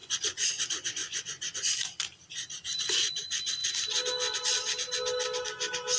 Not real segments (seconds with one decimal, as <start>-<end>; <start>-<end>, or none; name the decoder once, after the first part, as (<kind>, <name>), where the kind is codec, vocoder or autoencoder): 0.0-0.5 (vocoder, Vocos); 1.0-1.7